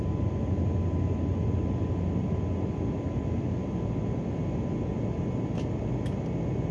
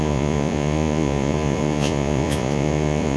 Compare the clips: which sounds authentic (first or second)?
first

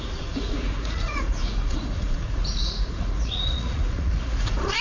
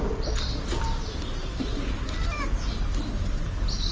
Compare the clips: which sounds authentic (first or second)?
second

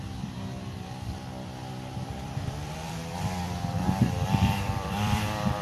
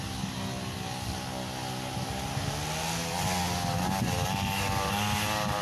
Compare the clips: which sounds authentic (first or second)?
second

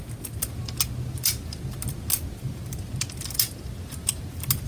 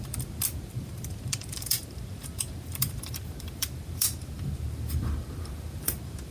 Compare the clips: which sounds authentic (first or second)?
first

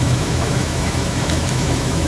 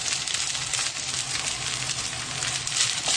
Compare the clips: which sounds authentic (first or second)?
second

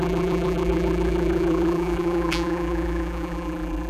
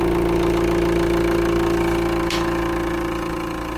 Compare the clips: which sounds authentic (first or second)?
second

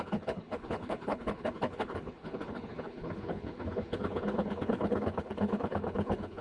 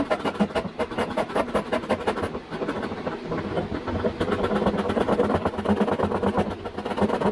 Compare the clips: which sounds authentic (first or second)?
second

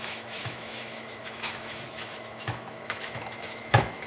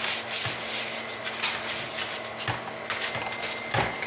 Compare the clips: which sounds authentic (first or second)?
second